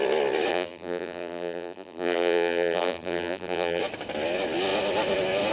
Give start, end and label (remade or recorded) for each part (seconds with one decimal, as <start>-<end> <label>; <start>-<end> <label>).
0.0-0.5 recorded; 0.5-3.8 remade; 3.8-5.5 recorded